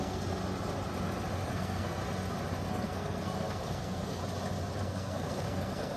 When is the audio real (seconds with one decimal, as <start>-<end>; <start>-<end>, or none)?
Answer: 0.4-1.5; 2.0-2.7; 4.2-4.8